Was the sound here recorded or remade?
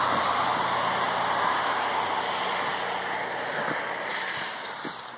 recorded